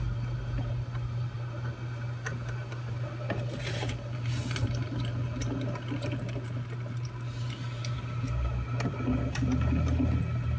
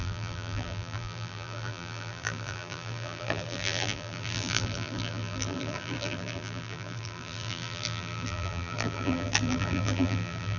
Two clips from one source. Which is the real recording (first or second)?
first